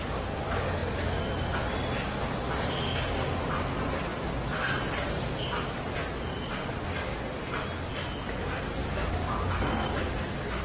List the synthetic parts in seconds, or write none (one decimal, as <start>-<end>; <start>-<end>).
8.8-9.5

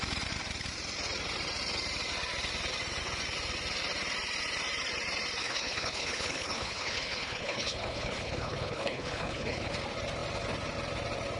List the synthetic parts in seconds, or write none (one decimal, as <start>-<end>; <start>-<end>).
5.4-9.7